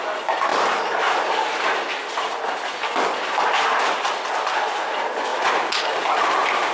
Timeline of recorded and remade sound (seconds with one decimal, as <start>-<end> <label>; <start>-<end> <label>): 0.0-6.7 recorded